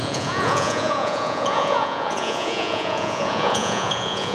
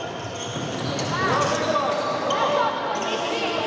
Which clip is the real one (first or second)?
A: second